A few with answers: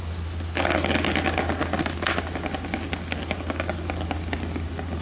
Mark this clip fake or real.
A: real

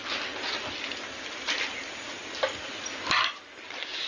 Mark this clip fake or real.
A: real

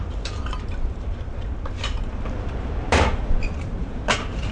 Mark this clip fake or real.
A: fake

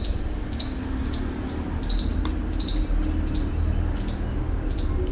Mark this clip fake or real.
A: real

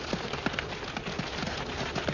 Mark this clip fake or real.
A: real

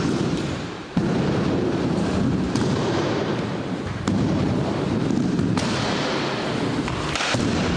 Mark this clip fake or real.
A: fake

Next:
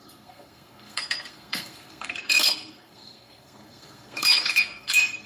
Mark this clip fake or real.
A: fake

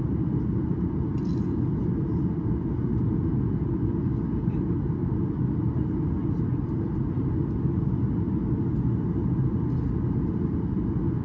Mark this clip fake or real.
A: real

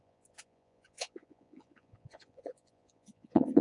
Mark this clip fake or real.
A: fake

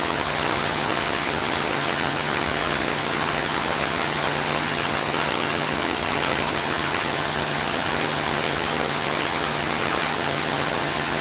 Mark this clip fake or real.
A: fake